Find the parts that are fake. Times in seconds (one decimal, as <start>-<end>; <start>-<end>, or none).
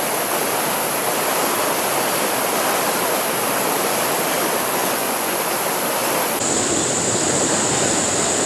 4.8-5.4